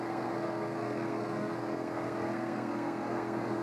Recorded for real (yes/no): no